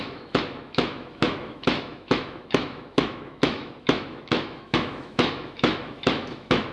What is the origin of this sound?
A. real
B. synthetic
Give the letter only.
B